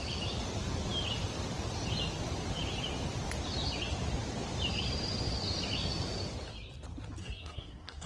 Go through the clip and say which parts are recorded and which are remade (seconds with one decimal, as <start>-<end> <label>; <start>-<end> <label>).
0.0-7.2 recorded; 7.2-8.1 remade